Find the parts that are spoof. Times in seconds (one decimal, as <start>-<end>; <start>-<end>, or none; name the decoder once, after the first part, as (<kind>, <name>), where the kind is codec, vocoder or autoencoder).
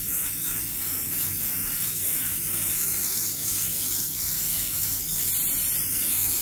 0.0-5.3 (codec, SNAC); 5.9-6.4